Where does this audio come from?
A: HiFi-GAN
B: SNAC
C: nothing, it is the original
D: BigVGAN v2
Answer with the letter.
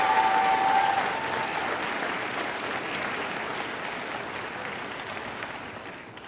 C